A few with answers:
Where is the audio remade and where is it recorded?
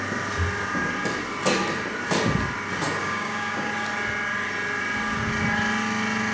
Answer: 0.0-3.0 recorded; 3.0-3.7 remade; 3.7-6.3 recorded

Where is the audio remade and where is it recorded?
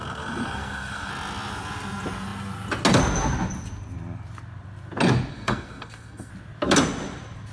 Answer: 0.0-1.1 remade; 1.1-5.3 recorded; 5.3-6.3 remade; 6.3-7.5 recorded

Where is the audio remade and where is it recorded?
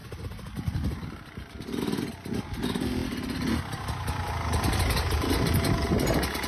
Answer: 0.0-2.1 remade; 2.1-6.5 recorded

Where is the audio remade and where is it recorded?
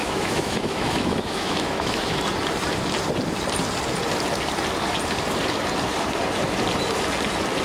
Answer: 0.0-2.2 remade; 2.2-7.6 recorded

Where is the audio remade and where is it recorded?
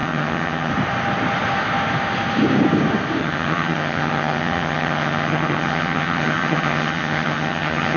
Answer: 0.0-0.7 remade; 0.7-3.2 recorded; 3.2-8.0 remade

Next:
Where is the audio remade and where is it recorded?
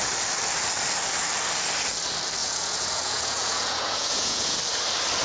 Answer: 0.0-2.4 recorded; 2.4-4.6 remade; 4.6-5.2 recorded